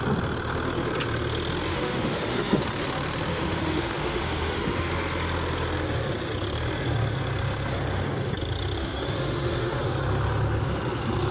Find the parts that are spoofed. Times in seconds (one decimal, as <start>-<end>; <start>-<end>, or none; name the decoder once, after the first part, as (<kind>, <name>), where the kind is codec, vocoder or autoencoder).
1.7-2.6 (autoencoder, DAC-VAE); 3.3-4.9; 8.8-9.8

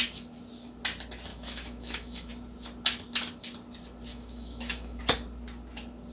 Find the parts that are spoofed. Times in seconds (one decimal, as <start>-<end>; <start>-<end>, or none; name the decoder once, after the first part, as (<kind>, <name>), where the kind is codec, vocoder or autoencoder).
1.3-2.3 (autoencoder, DAC-VAE); 4.1-5.0

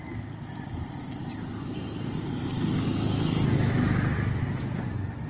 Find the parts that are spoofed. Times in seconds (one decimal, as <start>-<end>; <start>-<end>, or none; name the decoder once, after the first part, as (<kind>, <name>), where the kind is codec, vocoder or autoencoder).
none